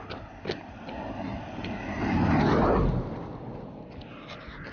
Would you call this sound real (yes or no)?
yes